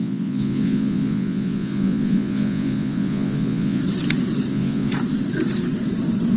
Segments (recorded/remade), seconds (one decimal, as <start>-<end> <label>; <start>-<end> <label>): 0.0-3.8 remade; 3.8-4.5 recorded; 4.5-4.9 remade; 4.9-6.4 recorded